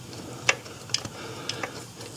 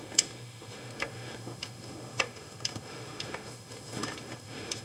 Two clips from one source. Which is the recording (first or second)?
first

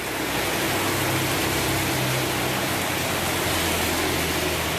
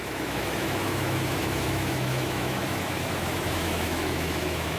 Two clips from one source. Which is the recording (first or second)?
first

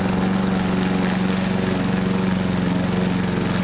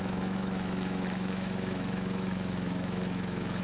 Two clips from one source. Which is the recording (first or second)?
first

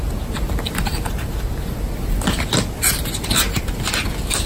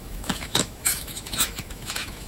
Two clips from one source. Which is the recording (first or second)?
first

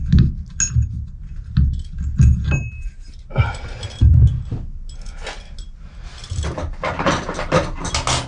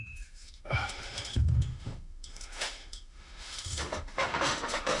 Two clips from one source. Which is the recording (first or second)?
first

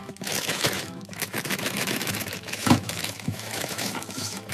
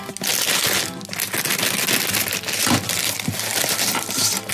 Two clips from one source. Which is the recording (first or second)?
second